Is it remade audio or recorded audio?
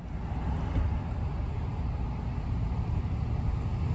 recorded